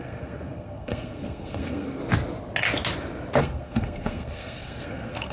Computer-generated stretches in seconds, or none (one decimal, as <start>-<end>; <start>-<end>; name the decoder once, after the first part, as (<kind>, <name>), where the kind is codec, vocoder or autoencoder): 0.0-2.0 (codec, SNAC); 3.4-5.3